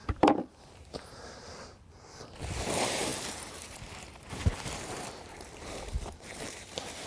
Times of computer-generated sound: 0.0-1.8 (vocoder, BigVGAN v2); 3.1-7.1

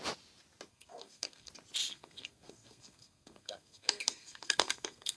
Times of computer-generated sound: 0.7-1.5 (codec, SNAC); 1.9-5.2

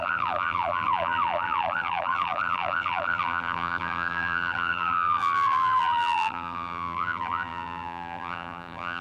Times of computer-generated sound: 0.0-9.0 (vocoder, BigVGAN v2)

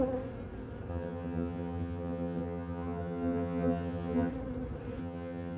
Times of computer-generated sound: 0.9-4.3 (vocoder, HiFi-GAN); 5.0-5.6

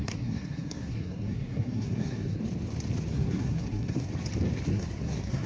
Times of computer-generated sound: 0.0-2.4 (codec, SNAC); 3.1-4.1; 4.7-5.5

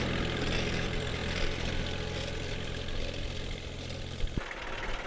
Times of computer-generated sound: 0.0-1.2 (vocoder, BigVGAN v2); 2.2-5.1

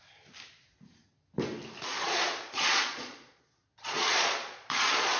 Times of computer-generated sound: 1.9-5.2 (vocoder, Vocos)